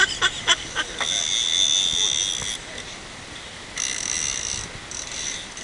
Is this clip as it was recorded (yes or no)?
yes